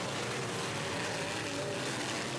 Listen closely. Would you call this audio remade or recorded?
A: recorded